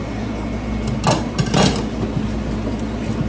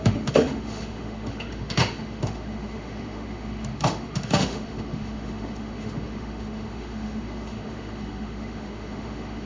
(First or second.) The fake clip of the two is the second